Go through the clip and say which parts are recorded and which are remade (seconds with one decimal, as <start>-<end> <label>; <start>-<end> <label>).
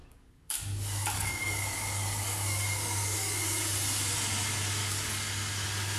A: 0.0-3.6 remade; 3.6-4.8 recorded; 4.8-5.3 remade; 5.3-6.0 recorded